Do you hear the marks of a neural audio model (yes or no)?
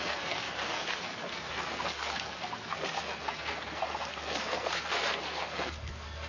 yes